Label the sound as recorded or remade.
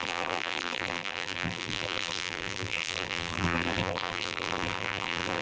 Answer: remade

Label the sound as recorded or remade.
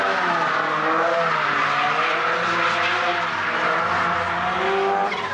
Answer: recorded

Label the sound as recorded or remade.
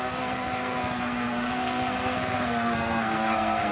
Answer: remade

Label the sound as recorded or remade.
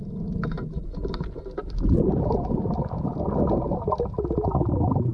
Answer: recorded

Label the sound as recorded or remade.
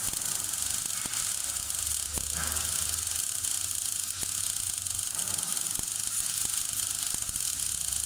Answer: recorded